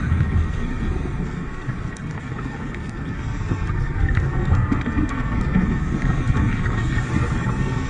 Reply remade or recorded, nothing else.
remade